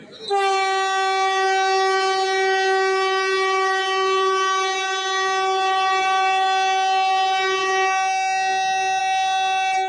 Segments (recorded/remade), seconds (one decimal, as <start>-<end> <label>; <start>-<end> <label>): 0.0-9.9 recorded